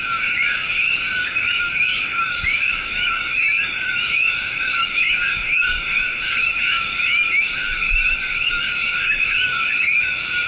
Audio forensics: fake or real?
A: fake